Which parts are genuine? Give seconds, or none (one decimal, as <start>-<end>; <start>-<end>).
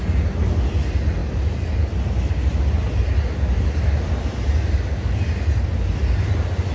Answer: 0.0-6.7